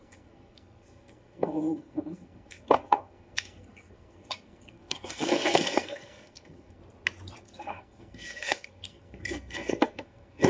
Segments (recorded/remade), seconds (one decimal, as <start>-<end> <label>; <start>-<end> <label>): 0.0-6.8 remade; 6.8-7.4 recorded; 7.4-10.5 remade